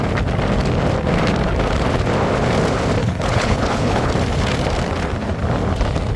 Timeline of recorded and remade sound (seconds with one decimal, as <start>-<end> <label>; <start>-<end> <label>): 0.0-3.0 recorded; 3.0-4.1 remade; 4.1-6.2 recorded